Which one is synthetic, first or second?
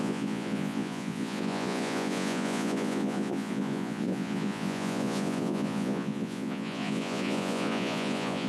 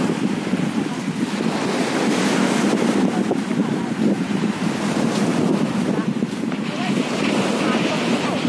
first